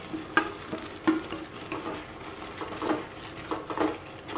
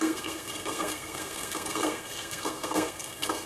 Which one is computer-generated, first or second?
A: second